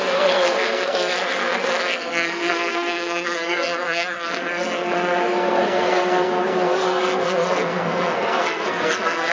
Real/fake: fake